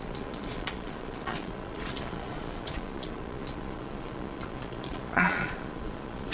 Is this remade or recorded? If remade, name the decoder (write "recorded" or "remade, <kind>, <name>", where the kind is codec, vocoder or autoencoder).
remade, vocoder, Vocos